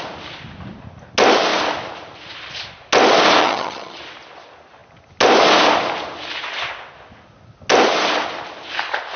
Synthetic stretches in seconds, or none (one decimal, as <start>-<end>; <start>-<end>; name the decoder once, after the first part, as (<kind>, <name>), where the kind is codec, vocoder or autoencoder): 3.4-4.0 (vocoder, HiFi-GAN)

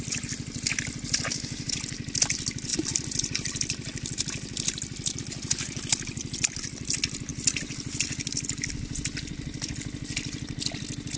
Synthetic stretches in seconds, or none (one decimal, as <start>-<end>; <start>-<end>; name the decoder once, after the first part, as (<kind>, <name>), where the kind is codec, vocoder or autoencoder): 2.7-5.2 (vocoder, BigVGAN v2); 7.3-9.7

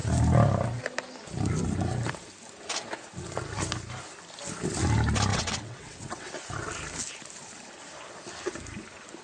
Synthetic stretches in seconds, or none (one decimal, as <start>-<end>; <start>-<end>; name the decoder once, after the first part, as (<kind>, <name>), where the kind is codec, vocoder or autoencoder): 5.3-6.3 (vocoder, WaveNeXt)

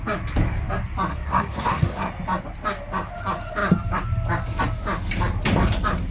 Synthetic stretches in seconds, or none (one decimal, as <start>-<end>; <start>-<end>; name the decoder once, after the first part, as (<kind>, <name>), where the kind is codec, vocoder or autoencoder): 1.1-2.1 (codec, SNAC)

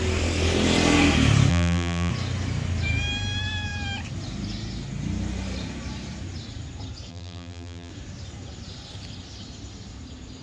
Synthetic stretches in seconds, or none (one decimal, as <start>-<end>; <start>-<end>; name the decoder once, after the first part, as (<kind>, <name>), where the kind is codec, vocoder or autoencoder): 1.5-2.1 (vocoder, BigVGAN v2); 7.1-7.9